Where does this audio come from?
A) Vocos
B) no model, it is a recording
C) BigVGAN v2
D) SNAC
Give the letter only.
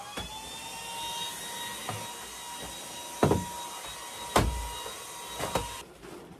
B